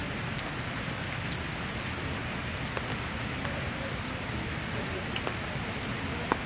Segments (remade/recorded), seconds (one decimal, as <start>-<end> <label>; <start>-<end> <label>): 0.0-6.5 recorded